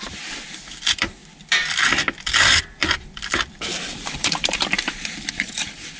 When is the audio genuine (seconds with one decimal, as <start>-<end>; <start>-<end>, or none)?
1.2-2.6